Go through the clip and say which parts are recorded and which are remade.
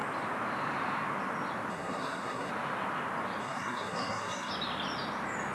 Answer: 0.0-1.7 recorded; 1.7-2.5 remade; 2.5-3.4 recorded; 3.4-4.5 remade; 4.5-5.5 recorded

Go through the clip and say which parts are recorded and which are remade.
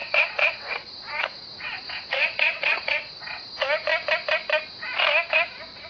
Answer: 0.0-3.5 remade; 3.5-5.9 recorded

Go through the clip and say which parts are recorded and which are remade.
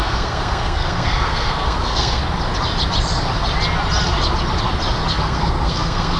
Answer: 0.0-2.2 remade; 2.2-5.1 recorded; 5.1-6.2 remade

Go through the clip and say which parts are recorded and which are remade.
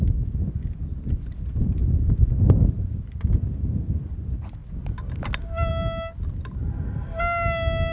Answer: 0.0-7.9 recorded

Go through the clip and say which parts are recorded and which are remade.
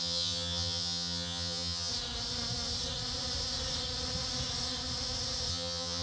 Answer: 0.0-1.9 remade; 1.9-5.5 recorded; 5.5-6.0 remade